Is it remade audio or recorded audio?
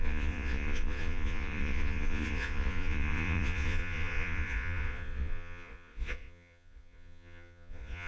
remade